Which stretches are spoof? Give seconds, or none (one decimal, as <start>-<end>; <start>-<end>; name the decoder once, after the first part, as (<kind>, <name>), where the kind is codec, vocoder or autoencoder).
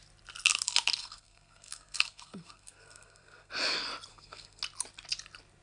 1.0-3.5 (codec, SNAC); 4.1-4.6